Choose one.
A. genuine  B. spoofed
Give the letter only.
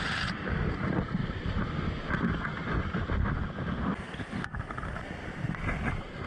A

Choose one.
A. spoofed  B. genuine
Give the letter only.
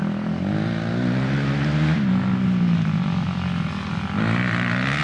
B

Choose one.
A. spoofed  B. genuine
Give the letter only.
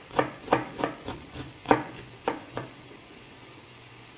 A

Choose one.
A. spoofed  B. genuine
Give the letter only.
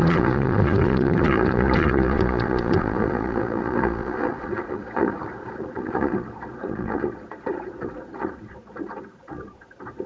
A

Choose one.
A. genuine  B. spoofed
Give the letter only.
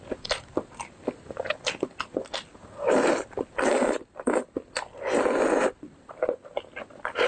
A